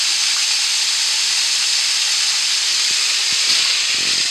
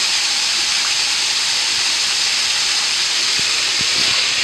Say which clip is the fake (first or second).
second